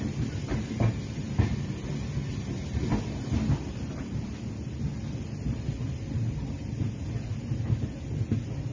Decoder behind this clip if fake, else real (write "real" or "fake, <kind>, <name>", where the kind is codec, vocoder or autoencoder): real